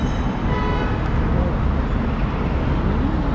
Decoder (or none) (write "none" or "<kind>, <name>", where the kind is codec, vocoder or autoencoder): none